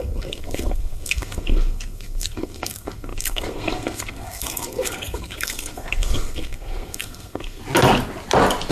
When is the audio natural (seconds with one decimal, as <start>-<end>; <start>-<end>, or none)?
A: 7.6-8.7